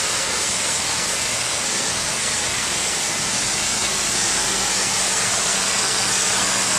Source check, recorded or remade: remade